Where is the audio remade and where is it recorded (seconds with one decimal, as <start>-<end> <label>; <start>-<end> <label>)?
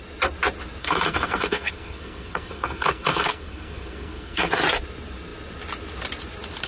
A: 0.0-0.8 recorded; 0.8-4.5 remade; 4.5-6.7 recorded